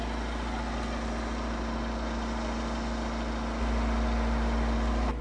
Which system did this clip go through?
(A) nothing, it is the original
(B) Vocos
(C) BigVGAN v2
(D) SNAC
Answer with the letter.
A